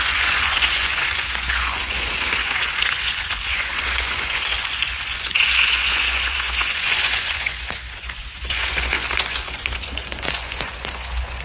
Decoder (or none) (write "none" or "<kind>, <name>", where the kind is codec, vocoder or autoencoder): vocoder, Vocos